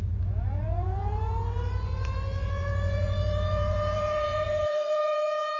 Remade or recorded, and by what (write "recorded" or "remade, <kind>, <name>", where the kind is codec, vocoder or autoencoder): remade, vocoder, Vocos